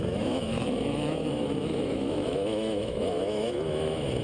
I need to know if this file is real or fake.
fake